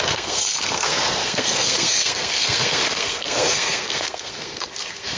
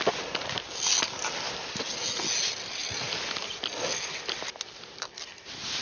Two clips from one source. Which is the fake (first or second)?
first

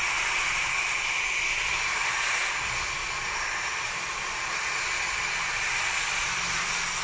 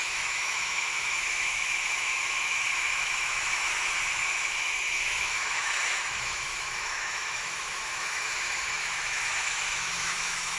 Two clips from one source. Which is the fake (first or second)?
second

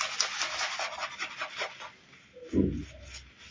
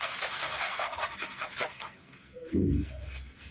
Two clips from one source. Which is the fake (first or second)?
second